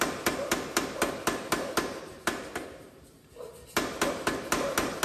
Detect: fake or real real